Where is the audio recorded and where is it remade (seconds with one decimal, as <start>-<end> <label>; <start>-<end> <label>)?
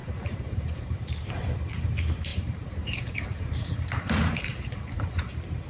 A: 0.0-1.3 remade; 1.3-2.3 recorded; 2.3-5.3 remade; 5.3-5.7 recorded